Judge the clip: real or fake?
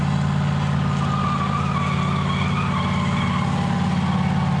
real